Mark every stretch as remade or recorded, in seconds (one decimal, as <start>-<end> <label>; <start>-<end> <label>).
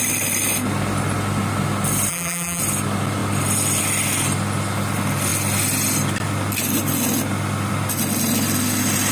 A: 0.0-2.1 recorded; 2.1-2.6 remade; 2.6-9.1 recorded